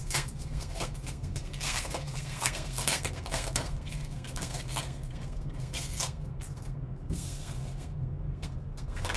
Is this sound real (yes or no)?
no